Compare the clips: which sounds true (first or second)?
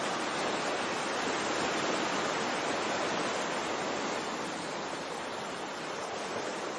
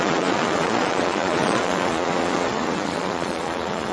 first